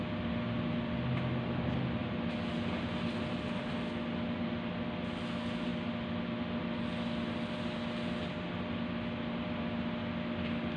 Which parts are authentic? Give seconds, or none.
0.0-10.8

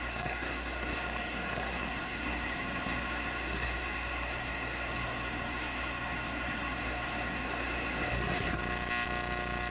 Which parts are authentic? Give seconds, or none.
8.6-9.7

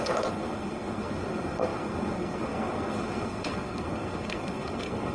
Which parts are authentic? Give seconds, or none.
none

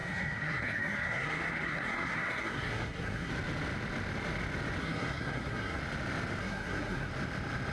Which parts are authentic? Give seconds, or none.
3.3-4.8; 5.8-6.4; 7.1-7.7

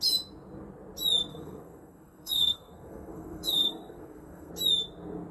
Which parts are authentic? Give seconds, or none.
0.0-1.3; 4.5-5.3

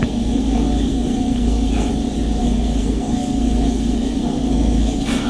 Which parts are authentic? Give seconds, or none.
1.9-2.4

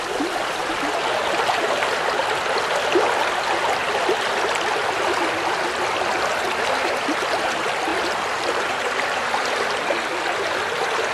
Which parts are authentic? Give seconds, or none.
0.0-11.1